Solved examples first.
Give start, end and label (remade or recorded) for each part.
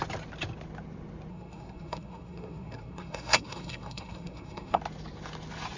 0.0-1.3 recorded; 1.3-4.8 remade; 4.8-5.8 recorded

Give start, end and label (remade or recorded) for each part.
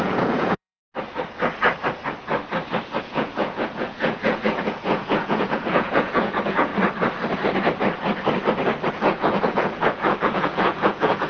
0.0-0.8 remade; 0.8-3.0 recorded; 3.0-6.7 remade; 6.7-8.9 recorded; 8.9-11.3 remade